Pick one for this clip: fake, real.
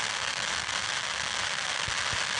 real